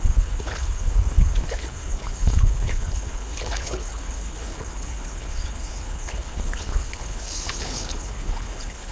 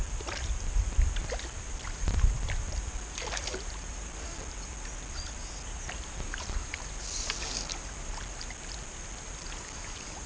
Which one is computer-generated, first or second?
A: first